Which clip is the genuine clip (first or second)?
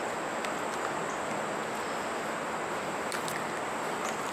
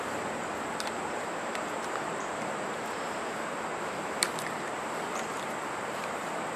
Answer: first